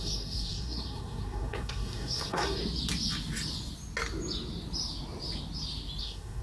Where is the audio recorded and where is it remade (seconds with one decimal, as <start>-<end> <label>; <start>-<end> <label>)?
0.0-2.6 remade; 2.6-6.0 recorded; 6.0-6.4 remade